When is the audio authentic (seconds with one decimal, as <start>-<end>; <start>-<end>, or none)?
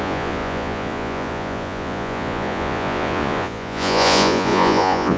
none